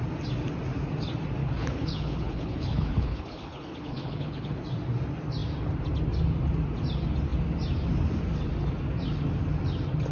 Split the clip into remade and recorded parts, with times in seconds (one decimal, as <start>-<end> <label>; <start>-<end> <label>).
0.0-1.4 recorded; 1.4-4.6 remade; 4.6-10.1 recorded